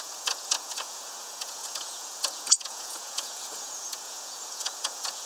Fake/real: fake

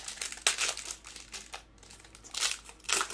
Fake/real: real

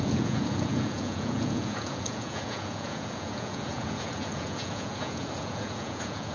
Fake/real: fake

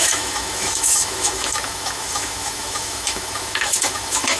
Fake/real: fake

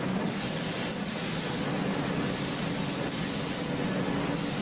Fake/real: real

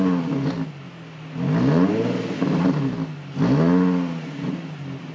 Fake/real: real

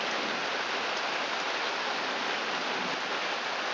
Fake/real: real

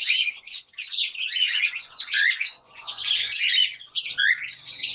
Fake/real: fake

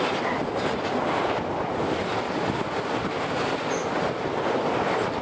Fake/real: real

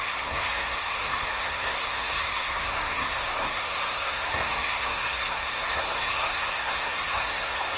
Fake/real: fake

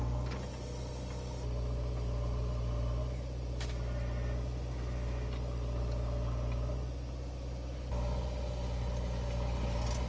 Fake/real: real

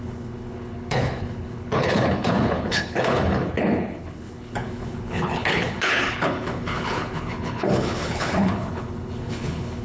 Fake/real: fake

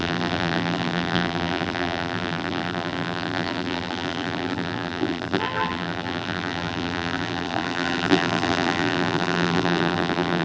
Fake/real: fake